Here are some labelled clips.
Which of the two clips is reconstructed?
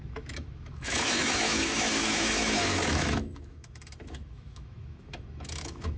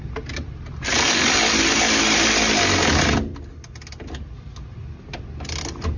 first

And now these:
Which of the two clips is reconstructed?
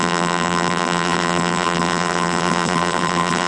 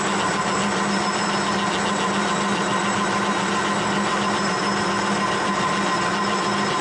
first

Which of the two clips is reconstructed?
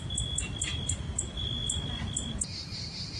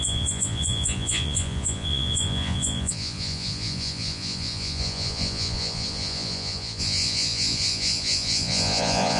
second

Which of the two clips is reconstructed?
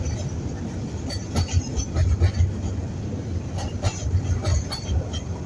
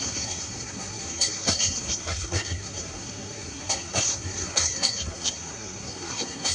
second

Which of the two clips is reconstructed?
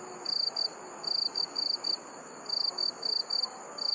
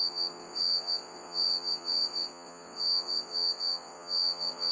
second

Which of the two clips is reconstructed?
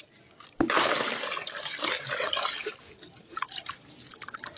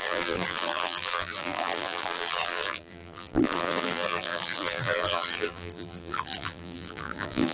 second